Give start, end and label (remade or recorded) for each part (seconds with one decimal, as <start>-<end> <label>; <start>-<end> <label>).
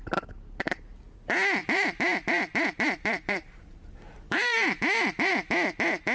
0.0-1.6 recorded; 1.6-5.3 remade; 5.3-6.1 recorded